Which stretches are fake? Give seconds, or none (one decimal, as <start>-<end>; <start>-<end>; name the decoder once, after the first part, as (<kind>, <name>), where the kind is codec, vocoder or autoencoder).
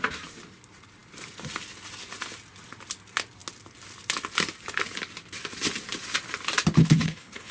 6.8-7.5 (codec, HILCodec)